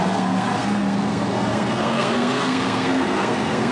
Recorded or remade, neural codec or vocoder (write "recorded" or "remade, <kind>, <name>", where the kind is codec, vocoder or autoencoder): remade, codec, SNAC